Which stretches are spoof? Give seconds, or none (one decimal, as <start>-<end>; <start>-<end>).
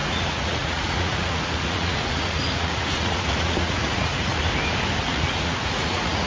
0.0-4.4; 5.0-6.3